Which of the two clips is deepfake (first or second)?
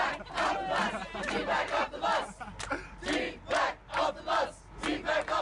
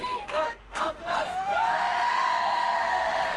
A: second